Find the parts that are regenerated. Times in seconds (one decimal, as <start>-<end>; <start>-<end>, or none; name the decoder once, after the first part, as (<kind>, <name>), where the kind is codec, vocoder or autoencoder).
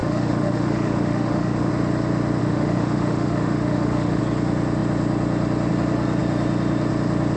0.0-1.7 (autoencoder, DAC-VAE); 2.4-4.2